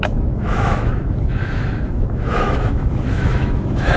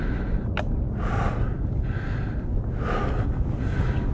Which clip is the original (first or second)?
second